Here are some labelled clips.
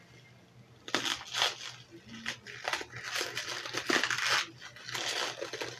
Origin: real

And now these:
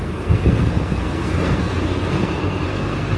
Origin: fake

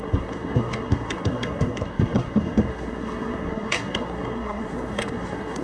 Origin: fake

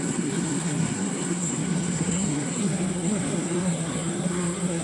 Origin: fake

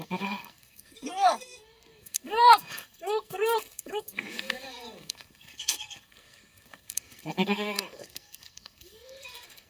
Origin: fake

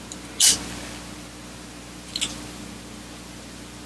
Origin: real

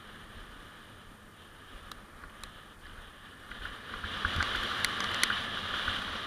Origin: real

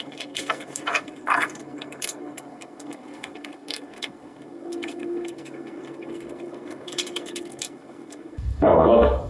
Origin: fake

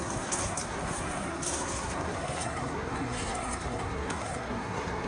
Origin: fake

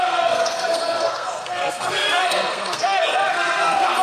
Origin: fake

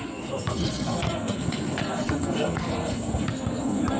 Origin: fake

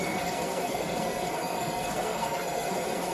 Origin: fake